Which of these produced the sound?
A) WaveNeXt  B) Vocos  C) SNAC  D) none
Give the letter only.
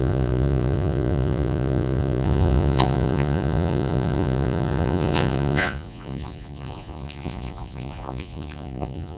B